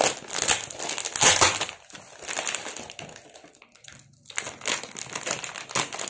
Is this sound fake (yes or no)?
no